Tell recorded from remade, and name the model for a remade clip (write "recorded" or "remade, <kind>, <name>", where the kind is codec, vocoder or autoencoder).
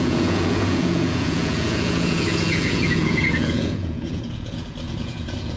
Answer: remade, vocoder, Vocos